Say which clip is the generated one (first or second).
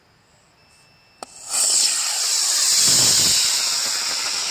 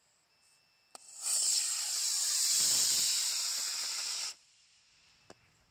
second